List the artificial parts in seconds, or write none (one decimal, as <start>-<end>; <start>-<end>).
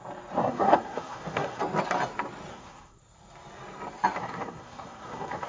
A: 0.4-1.6; 2.5-3.0; 4.2-5.5